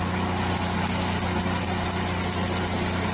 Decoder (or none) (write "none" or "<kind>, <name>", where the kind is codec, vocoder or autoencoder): none